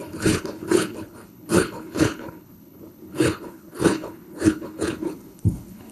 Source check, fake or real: fake